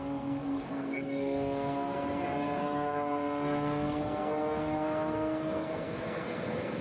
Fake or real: fake